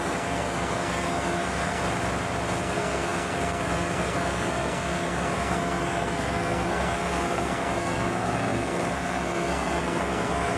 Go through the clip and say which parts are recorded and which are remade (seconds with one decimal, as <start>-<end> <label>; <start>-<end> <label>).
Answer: 0.0-1.8 remade; 1.8-2.6 recorded; 2.6-10.6 remade